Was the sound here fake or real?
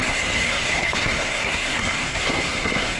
fake